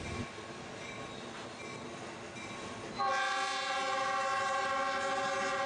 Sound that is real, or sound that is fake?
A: real